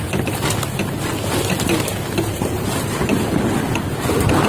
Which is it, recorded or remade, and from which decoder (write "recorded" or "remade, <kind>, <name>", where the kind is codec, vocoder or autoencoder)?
recorded